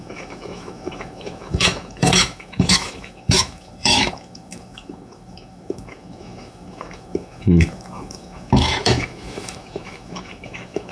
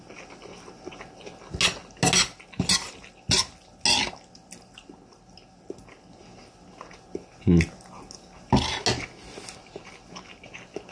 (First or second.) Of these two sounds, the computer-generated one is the first